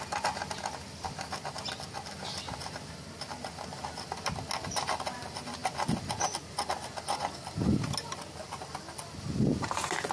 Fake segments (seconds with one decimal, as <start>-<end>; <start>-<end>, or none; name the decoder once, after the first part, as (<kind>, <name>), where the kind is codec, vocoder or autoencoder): none